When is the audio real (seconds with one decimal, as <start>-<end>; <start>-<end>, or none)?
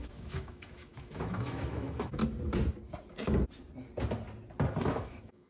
2.2-4.8